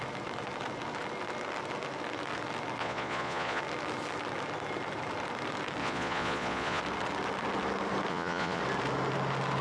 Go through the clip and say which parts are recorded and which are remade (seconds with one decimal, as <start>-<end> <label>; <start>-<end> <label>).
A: 0.0-2.8 recorded; 2.8-3.6 remade; 3.6-5.8 recorded; 5.8-6.8 remade; 6.8-8.1 recorded; 8.1-8.6 remade; 8.6-9.6 recorded